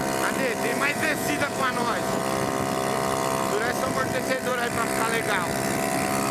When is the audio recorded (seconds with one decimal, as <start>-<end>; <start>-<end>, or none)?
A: 0.0-0.7; 2.2-6.3